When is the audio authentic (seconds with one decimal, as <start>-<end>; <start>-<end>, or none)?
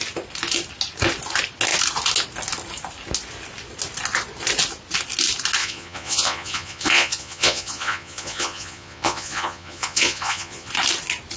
0.0-5.6; 10.7-11.4